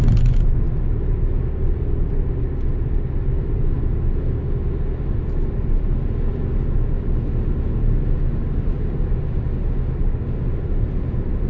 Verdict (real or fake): real